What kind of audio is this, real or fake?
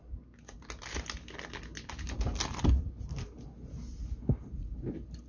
real